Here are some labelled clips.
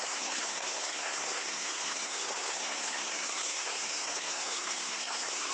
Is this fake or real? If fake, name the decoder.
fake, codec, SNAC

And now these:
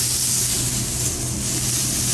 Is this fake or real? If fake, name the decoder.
real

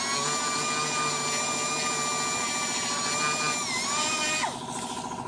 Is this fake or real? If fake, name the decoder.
real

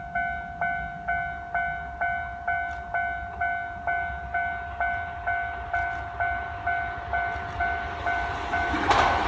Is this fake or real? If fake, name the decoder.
real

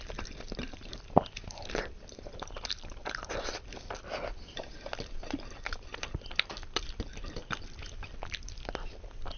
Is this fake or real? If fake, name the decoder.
real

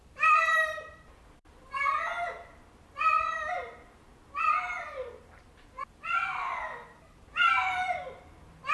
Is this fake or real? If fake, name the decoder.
fake, vocoder, BigVGAN v2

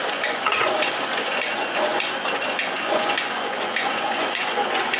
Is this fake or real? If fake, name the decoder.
fake, vocoder, Vocos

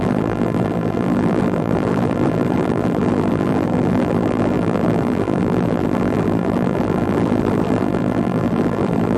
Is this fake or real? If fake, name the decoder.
fake, vocoder, BigVGAN v2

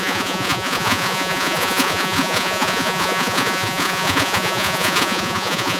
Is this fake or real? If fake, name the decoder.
fake, vocoder, Vocos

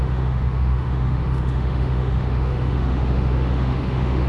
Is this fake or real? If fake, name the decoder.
fake, autoencoder, DAC-VAE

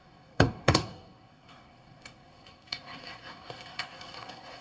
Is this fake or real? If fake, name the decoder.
fake, codec, SNAC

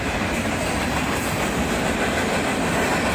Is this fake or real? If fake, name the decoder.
fake, vocoder, BigVGAN v2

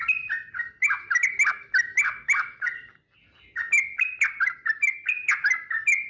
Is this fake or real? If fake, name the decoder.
real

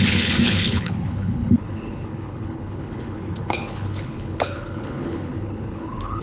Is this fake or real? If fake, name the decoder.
fake, codec, HILCodec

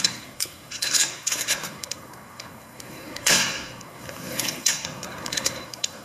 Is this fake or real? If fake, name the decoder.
fake, codec, SNAC